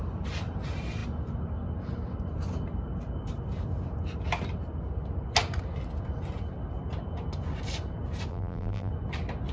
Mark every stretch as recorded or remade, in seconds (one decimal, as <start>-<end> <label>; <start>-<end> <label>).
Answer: 0.0-8.3 recorded; 8.3-8.9 remade; 8.9-9.5 recorded